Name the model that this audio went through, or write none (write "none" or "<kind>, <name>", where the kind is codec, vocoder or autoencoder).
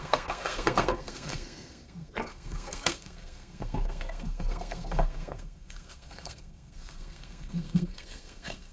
codec, SNAC